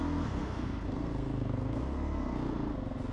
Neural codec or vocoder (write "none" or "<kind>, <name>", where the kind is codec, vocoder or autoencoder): codec, SNAC